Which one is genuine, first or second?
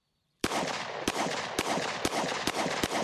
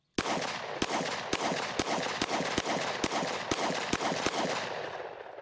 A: second